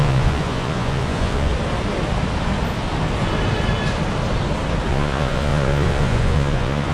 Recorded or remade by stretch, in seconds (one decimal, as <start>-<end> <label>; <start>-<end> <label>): 0.0-1.5 remade; 1.5-4.9 recorded; 4.9-6.9 remade